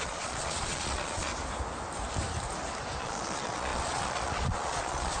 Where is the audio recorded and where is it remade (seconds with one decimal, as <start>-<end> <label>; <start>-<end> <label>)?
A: 0.0-1.3 remade; 1.3-3.0 recorded; 3.0-5.2 remade